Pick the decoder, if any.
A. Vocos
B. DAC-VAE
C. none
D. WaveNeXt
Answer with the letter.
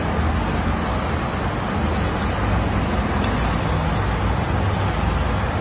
C